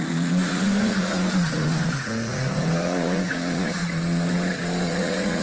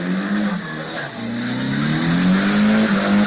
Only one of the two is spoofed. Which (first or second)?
first